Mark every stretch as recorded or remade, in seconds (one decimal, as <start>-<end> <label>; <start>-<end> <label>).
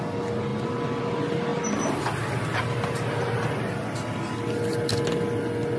0.0-5.8 recorded